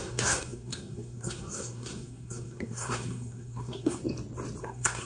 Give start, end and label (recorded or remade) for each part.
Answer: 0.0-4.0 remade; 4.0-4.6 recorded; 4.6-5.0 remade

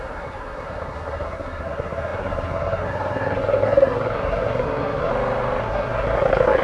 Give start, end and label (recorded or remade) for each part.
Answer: 0.0-5.1 remade; 5.1-5.6 recorded; 5.6-6.6 remade

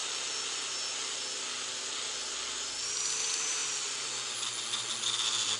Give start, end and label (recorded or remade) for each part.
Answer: 0.0-5.6 recorded

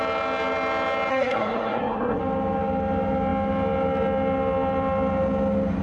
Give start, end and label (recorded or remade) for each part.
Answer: 0.0-1.1 recorded; 1.1-2.2 remade; 2.2-5.8 recorded

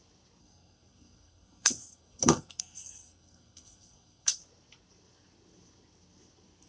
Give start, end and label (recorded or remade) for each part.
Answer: 0.0-0.4 recorded; 0.4-4.4 remade; 4.4-6.7 recorded

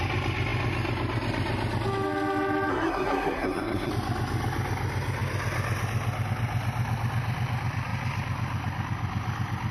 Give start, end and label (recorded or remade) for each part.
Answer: 0.0-2.7 recorded; 2.7-3.9 remade; 3.9-9.7 recorded

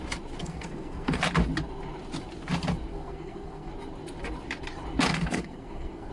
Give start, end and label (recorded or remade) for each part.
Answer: 0.0-0.4 recorded; 0.4-1.2 remade; 1.2-2.9 recorded; 2.9-3.7 remade; 3.7-5.1 recorded; 5.1-6.1 remade

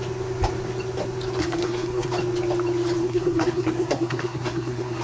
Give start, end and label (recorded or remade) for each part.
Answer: 0.0-1.4 recorded; 1.4-2.1 remade; 2.1-3.0 recorded; 3.0-5.0 remade